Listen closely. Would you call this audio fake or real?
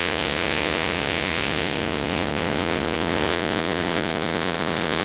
fake